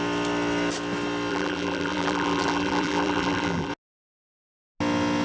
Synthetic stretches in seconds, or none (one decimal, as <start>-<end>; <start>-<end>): 1.3-3.7